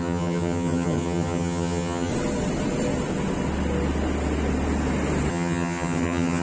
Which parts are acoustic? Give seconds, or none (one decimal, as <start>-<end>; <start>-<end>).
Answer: 2.1-5.3